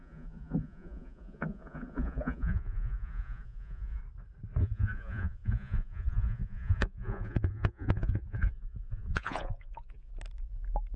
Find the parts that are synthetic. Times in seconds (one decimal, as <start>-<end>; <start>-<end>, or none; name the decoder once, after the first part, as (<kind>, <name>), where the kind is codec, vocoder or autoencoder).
0.0-4.0 (vocoder, Vocos); 4.6-10.1